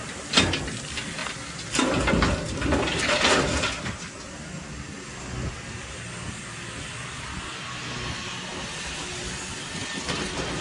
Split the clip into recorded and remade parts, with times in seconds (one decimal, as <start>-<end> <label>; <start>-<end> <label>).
0.0-10.6 recorded